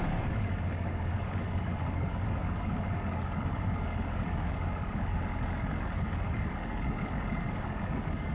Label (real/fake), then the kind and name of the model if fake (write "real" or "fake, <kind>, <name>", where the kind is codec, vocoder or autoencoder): fake, codec, DAC